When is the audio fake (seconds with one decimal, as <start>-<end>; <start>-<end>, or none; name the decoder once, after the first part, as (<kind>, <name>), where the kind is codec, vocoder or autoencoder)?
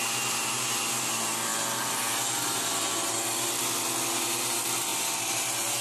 none